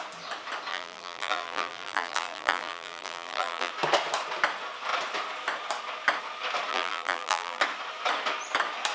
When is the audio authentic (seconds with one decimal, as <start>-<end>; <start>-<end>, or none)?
0.0-0.7; 3.7-6.7; 7.6-8.9